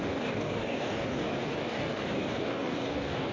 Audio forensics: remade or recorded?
remade